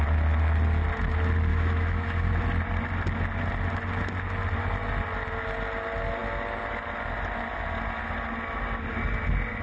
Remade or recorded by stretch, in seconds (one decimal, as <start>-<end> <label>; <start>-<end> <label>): 0.0-1.5 recorded; 1.5-2.3 remade; 2.3-9.6 recorded

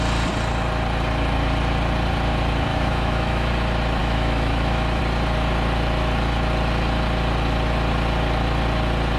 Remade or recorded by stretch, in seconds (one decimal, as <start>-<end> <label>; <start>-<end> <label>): 0.0-2.7 recorded; 2.7-3.5 remade; 3.5-4.0 recorded; 4.0-5.0 remade; 5.0-9.2 recorded

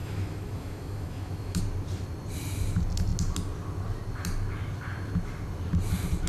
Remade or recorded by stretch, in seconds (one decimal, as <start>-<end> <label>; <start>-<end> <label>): 0.0-1.6 remade; 1.6-6.3 recorded

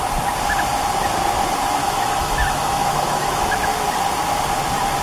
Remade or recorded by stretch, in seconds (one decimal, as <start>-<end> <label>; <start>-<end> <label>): 0.0-1.8 recorded; 1.8-3.5 remade; 3.5-5.0 recorded

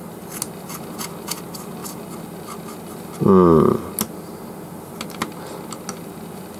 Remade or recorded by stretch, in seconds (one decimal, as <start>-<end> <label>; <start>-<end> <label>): 0.0-6.6 recorded

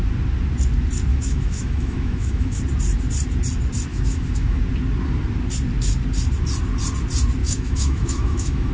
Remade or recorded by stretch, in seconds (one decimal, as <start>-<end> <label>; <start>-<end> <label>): 0.0-1.1 recorded; 1.1-2.6 remade; 2.6-3.9 recorded; 3.9-4.6 remade; 4.6-7.4 recorded; 7.4-8.7 remade

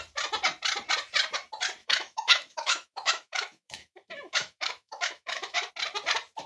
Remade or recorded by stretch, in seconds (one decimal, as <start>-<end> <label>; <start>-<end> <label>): 0.0-1.8 recorded; 1.8-5.7 remade; 5.7-6.5 recorded

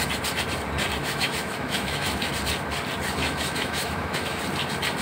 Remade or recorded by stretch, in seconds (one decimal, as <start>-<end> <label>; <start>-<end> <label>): 0.0-1.0 recorded; 1.0-2.3 remade; 2.3-3.2 recorded; 3.2-4.4 remade; 4.4-5.0 recorded